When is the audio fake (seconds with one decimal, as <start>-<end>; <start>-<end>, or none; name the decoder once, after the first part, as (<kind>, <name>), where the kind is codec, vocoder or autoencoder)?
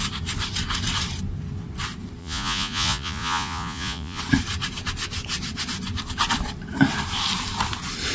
2.2-4.2 (vocoder, Vocos)